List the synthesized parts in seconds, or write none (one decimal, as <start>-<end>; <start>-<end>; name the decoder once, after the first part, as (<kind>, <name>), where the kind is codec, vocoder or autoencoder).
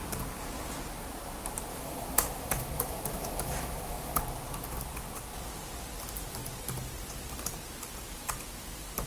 1.7-4.2 (autoencoder, DAC-VAE)